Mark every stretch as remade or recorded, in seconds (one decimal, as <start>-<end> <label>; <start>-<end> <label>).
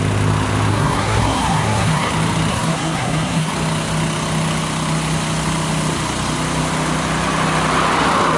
0.0-0.7 recorded; 0.7-2.1 remade; 2.1-2.5 recorded; 2.5-3.5 remade; 3.5-8.4 recorded